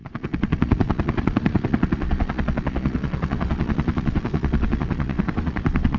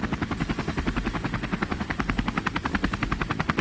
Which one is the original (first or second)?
second